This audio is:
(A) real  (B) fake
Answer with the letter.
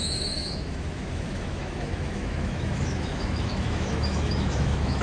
B